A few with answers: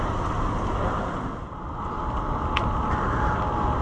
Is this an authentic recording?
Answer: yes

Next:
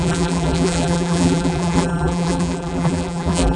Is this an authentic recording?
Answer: no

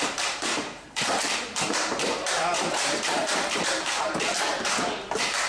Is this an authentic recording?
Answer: no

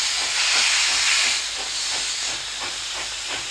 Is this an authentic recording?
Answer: yes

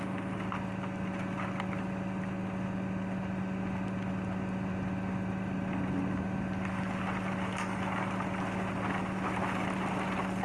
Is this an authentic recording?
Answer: yes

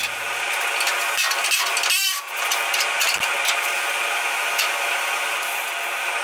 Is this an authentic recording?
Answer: yes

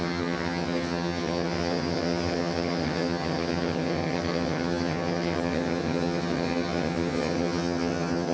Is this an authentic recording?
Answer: no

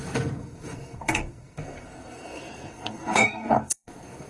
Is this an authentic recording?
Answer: no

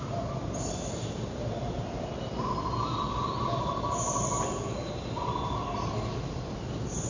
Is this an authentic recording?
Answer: yes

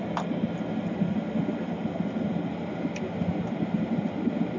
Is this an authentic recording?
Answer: yes